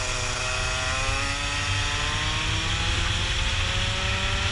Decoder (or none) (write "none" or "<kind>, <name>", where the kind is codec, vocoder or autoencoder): none